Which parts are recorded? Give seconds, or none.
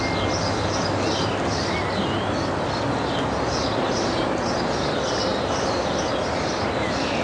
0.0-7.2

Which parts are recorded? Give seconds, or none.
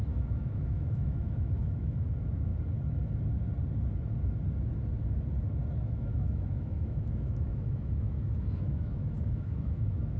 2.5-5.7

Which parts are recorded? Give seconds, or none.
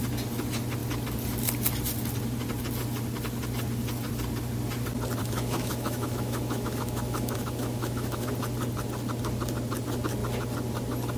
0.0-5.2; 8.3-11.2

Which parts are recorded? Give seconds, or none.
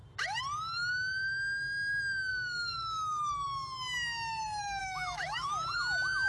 0.0-2.3; 3.3-4.8; 5.5-6.3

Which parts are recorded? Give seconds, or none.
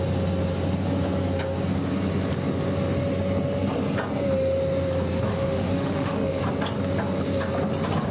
0.0-5.3; 6.4-8.1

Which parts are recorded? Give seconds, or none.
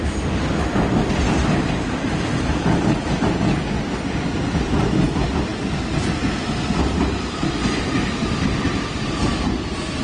0.0-10.0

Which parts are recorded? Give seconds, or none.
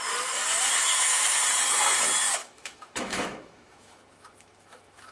0.0-0.8; 1.4-2.4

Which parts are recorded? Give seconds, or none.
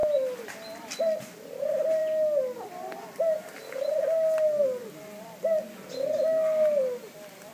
0.0-7.5